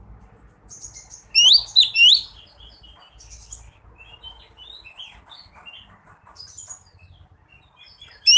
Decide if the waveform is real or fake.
real